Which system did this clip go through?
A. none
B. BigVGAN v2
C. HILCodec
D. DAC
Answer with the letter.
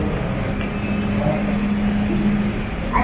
A